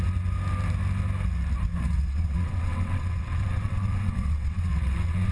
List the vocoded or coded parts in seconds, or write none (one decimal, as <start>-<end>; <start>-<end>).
1.7-5.3